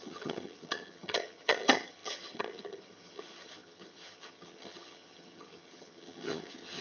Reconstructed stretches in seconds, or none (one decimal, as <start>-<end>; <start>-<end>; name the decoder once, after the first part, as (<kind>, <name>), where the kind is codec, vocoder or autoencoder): 0.0-6.8 (vocoder, HiFi-GAN)